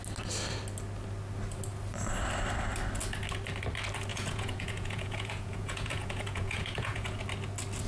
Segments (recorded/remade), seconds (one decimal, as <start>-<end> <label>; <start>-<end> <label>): 0.0-4.1 recorded; 4.1-7.2 remade; 7.2-7.9 recorded